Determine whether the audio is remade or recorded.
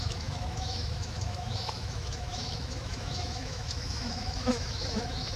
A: remade